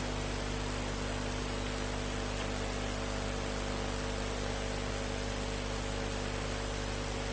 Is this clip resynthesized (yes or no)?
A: no